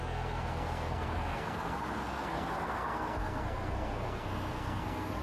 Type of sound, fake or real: fake